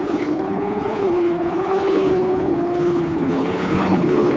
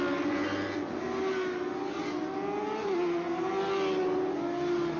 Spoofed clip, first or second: first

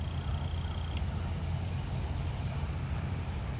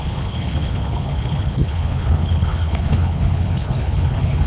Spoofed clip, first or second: second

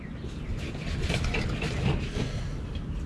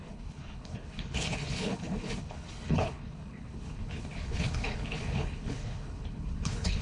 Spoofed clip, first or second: second